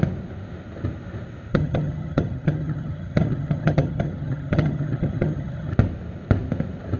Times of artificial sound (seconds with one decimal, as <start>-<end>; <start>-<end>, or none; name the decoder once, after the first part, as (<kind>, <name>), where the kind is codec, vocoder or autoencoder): 1.5-5.7 (vocoder, HiFi-GAN)